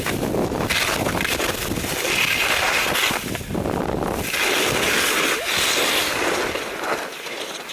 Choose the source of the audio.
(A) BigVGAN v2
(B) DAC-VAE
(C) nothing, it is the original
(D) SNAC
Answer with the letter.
C